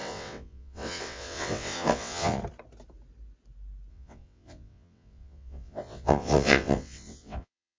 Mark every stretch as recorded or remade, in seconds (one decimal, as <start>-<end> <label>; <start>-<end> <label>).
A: 0.0-2.4 remade; 2.4-3.9 recorded; 3.9-7.8 remade